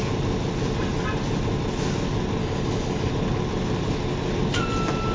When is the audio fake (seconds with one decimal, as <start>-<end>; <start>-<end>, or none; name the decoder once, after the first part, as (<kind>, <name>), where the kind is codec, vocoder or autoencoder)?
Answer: 2.4-3.1 (codec, DAC)